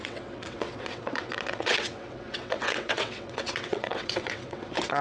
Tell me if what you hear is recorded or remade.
remade